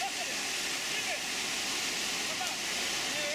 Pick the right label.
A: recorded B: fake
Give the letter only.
A